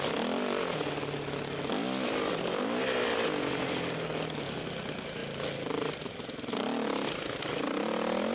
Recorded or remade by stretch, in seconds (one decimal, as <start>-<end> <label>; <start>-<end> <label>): 0.0-8.3 recorded